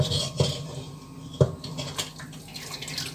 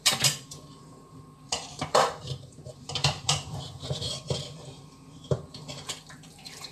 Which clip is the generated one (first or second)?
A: second